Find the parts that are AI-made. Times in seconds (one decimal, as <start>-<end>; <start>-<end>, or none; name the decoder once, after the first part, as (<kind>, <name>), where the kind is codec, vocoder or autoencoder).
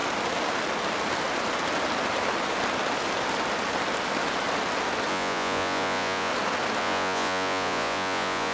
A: 5.1-6.3 (vocoder, Vocos); 6.8-8.5